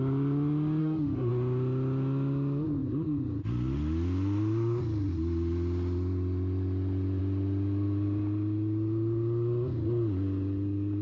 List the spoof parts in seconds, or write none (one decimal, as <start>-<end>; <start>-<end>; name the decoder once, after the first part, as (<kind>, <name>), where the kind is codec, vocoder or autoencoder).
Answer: 0.8-1.3 (autoencoder, DAC-VAE)